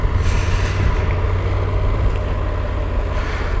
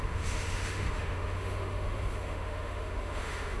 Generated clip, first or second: second